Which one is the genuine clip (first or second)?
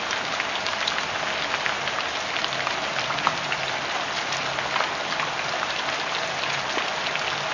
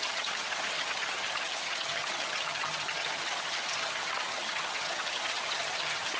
first